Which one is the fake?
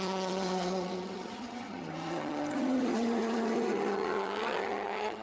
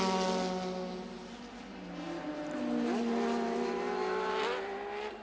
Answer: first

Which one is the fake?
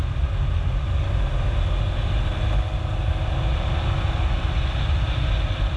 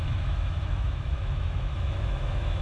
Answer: second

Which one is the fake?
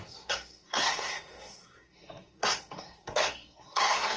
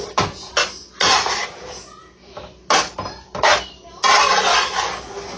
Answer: first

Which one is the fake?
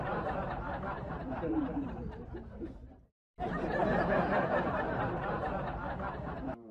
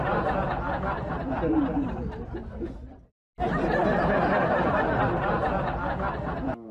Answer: first